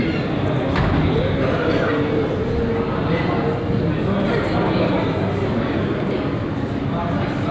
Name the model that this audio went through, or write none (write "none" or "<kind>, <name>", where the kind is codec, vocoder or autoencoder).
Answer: none